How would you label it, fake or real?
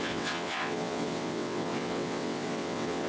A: fake